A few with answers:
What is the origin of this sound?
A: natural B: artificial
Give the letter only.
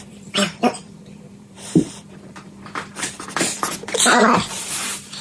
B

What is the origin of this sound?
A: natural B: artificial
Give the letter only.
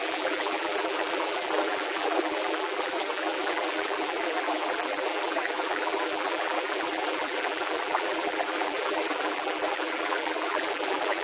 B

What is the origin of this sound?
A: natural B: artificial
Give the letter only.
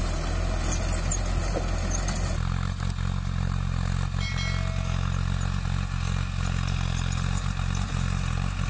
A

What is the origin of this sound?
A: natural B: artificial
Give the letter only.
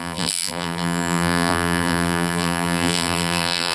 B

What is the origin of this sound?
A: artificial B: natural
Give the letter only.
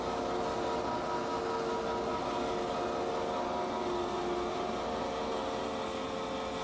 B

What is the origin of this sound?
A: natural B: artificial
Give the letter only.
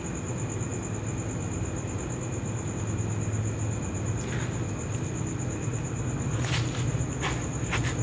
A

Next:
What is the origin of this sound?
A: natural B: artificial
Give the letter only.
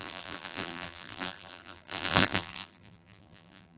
B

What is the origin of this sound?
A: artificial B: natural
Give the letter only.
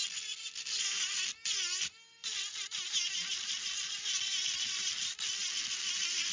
B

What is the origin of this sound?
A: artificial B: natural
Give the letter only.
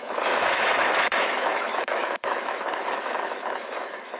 A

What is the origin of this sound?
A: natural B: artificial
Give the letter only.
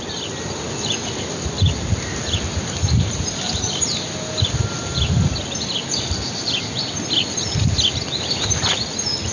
A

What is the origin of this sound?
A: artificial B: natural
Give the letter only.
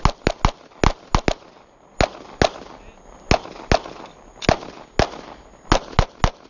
B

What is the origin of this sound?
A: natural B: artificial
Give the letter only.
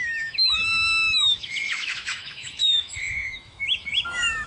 B